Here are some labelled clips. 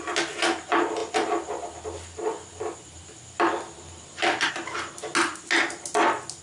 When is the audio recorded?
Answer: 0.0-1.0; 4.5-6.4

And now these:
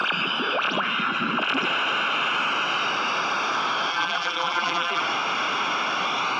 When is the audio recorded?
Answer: 0.0-3.9; 5.0-6.4

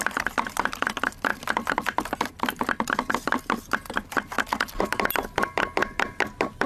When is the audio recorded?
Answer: 0.0-6.7